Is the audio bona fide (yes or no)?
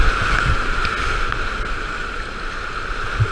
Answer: yes